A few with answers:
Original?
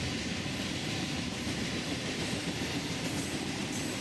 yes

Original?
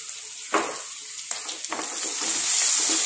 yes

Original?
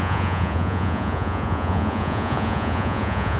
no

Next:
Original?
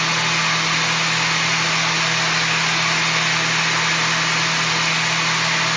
yes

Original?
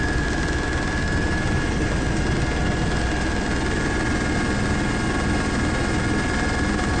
yes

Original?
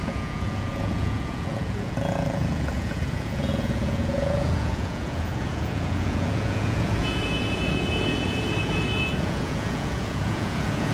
no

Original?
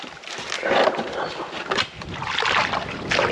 yes